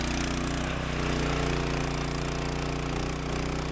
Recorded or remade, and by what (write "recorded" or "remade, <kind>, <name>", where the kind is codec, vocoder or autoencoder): recorded